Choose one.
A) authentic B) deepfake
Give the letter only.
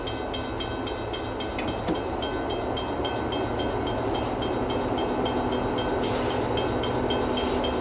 A